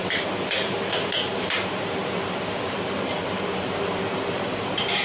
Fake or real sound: fake